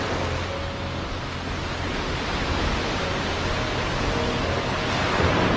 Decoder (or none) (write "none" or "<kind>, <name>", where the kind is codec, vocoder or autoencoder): none